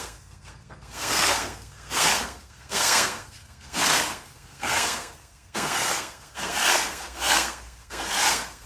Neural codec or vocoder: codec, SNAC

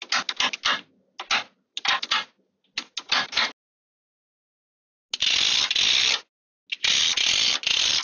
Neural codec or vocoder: none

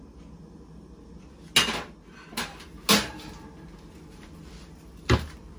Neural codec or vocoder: none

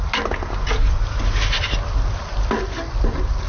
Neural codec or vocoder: none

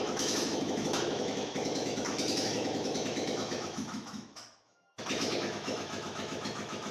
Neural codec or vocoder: autoencoder, DAC-VAE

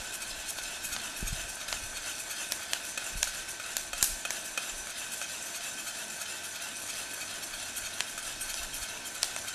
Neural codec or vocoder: vocoder, BigVGAN v2